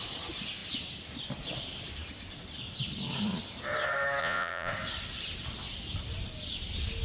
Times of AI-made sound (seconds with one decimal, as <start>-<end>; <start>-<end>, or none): 4.2-4.7

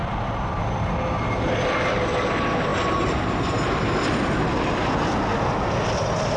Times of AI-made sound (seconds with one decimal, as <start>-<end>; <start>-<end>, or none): none

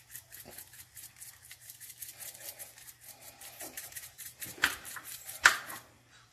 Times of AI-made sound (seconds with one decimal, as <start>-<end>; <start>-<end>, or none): 3.6-5.5

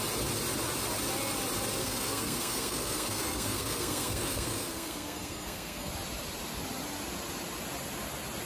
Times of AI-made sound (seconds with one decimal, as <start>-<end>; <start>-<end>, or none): 1.8-5.9

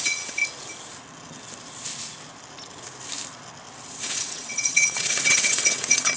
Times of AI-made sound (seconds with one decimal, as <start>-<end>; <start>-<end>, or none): 0.0-0.4; 4.0-6.2

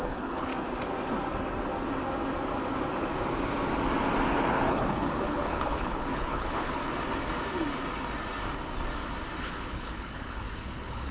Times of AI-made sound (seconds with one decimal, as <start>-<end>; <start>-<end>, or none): 0.0-0.5; 4.7-6.8; 9.4-11.1